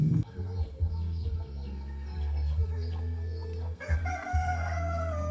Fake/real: fake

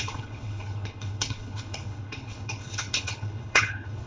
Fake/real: fake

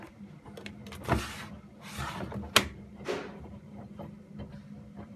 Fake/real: real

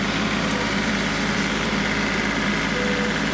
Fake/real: real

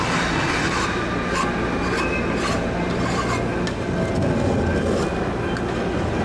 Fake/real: real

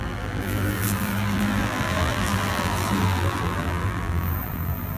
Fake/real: fake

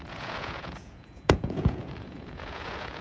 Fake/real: fake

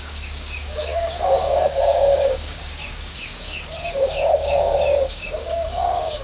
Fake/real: fake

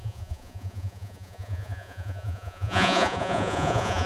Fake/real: fake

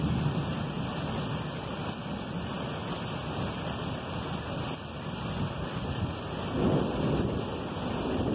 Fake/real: real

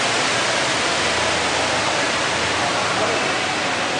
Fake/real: real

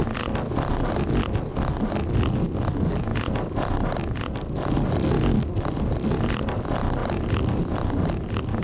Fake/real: real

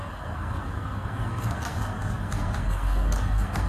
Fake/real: fake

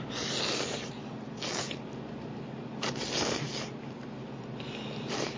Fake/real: real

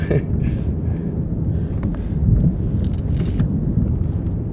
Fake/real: real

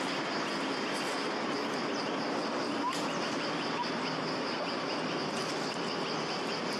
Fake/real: real